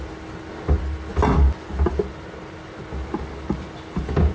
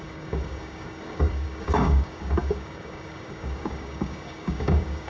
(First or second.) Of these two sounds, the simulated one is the second